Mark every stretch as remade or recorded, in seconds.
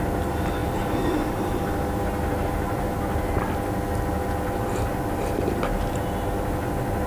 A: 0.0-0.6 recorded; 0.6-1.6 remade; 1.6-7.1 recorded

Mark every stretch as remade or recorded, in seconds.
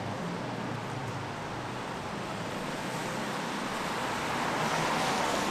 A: 0.0-5.5 recorded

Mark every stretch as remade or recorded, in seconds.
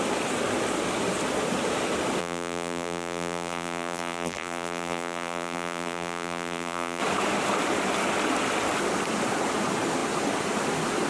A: 0.0-2.2 recorded; 2.2-7.0 remade; 7.0-11.1 recorded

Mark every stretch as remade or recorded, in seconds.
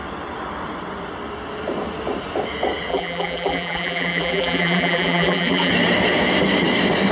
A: 0.0-2.9 recorded; 2.9-5.7 remade; 5.7-7.1 recorded